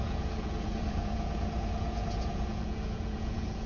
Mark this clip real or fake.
fake